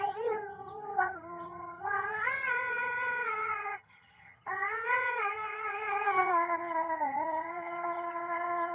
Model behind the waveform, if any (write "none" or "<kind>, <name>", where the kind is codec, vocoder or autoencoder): vocoder, HiFi-GAN